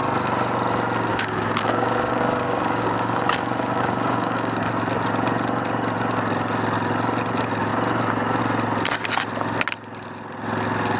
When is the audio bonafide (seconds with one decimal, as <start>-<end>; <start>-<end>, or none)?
0.0-1.1; 4.7-11.0